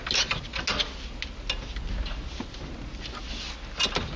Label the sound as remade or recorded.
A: recorded